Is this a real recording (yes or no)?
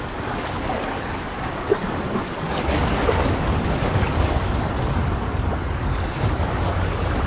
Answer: no